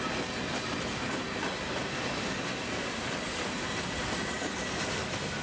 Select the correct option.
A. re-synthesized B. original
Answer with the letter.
B